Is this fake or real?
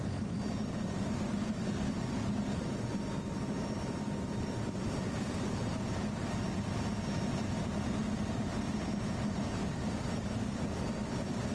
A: real